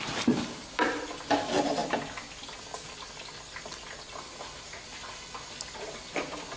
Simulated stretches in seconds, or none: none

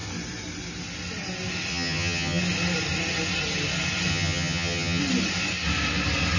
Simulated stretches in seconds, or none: 1.7-2.4 (vocoder, HiFi-GAN); 4.1-5.0

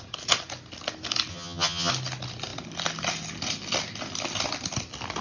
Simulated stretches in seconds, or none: 1.3-1.9 (vocoder, HiFi-GAN)

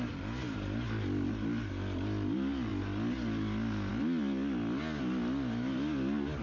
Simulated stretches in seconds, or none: none

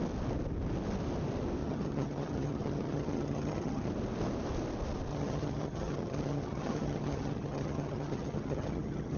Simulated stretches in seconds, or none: 1.6-3.9 (vocoder, HiFi-GAN); 5.1-9.2

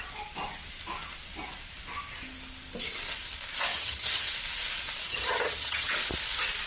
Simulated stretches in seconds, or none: 3.7-4.3 (vocoder, HiFi-GAN); 5.0-5.9

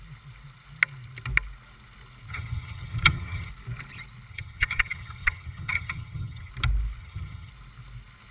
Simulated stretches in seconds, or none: 2.3-3.5 (vocoder, HiFi-GAN); 4.3-6.5; 7.0-7.5